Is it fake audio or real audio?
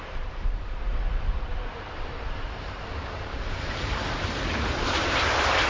fake